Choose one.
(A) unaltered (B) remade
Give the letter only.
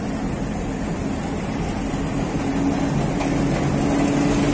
A